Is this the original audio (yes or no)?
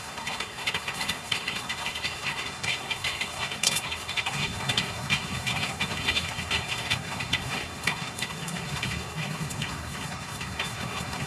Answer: no